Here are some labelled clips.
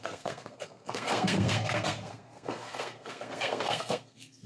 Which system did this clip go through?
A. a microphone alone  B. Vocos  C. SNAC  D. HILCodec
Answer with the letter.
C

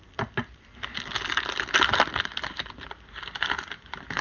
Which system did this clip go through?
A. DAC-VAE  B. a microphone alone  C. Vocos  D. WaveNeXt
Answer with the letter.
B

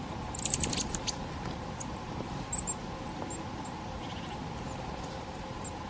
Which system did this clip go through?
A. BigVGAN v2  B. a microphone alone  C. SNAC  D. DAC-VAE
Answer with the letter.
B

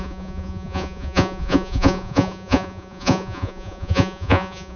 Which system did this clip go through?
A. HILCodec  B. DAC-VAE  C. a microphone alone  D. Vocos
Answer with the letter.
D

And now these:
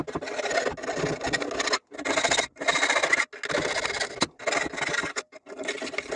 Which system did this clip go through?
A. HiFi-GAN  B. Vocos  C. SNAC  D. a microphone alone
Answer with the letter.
D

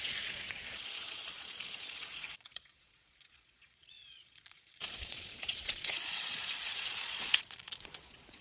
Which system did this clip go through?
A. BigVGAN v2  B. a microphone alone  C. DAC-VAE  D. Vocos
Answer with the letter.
D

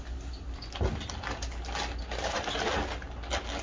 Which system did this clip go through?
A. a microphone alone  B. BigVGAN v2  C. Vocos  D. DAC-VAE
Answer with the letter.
A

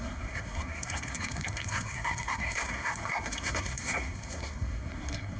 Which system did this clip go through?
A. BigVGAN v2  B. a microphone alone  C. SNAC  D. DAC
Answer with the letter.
C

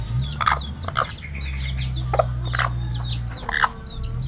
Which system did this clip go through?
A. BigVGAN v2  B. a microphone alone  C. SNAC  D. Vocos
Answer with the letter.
B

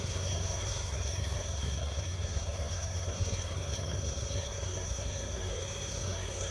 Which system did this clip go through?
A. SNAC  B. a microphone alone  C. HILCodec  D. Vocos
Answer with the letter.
A